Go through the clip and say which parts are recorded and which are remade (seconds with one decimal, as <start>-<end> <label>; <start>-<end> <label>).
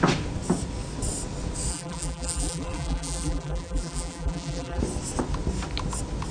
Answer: 0.0-1.7 recorded; 1.7-4.8 remade; 4.8-6.3 recorded